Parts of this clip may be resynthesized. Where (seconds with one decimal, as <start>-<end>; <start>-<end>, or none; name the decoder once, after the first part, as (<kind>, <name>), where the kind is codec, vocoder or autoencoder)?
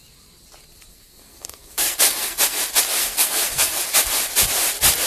0.9-2.6 (codec, SNAC); 3.0-3.8